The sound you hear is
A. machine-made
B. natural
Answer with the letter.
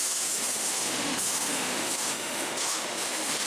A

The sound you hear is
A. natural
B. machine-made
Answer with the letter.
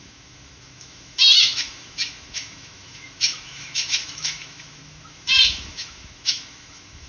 B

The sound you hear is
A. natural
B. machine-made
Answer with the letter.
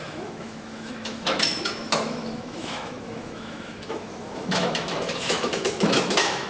B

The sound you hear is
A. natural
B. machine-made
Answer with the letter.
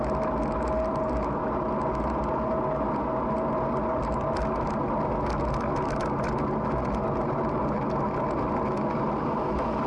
A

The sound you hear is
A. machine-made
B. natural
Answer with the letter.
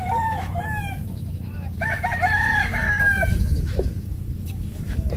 A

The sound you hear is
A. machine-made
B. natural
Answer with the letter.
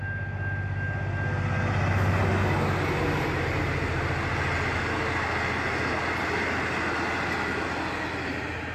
B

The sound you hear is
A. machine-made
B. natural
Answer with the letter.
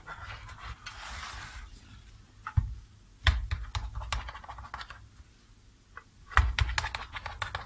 B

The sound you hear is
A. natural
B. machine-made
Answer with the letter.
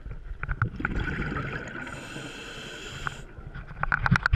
A